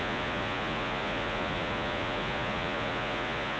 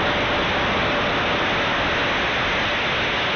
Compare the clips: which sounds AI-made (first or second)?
first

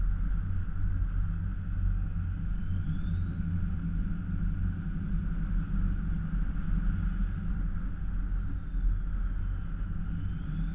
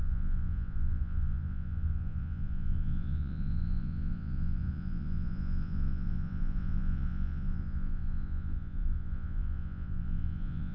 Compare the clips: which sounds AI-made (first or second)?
second